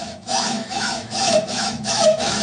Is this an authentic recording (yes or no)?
no